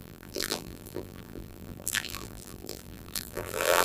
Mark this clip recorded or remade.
remade